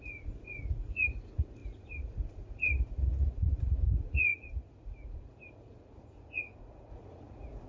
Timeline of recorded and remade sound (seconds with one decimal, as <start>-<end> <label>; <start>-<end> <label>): 0.0-7.7 remade